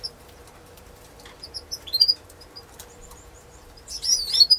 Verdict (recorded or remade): remade